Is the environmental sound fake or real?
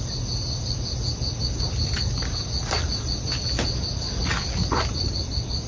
real